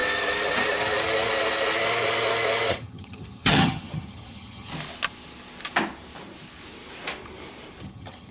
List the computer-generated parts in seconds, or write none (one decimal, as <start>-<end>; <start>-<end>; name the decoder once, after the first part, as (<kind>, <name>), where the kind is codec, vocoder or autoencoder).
2.7-4.7 (vocoder, HiFi-GAN); 7.8-8.3